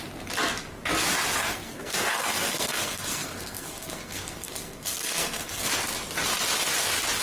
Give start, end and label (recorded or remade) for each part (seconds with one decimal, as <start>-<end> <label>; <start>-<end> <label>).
0.0-1.4 recorded; 1.4-5.7 remade; 5.7-7.2 recorded